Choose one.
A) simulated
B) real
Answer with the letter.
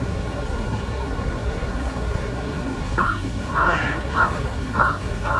A